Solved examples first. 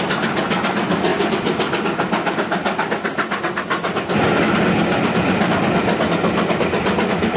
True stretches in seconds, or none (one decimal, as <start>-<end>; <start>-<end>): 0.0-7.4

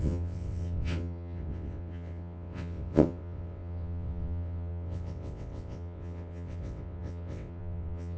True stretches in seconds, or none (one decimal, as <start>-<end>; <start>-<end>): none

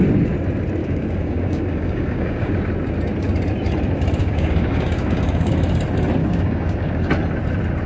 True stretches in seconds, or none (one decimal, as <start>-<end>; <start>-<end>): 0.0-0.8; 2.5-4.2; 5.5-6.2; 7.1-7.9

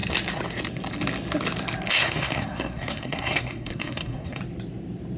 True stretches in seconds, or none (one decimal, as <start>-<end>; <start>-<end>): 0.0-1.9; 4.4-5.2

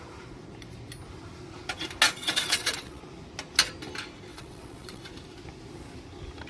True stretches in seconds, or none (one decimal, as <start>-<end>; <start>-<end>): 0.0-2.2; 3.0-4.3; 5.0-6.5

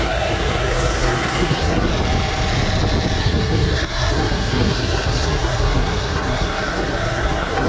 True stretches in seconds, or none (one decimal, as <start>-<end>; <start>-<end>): 1.9-3.2

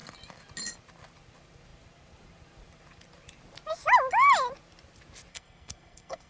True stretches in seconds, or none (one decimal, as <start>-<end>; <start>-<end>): 0.0-5.3

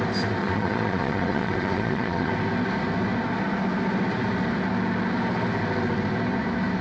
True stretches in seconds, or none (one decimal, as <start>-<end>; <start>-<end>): 0.0-0.4; 2.3-6.8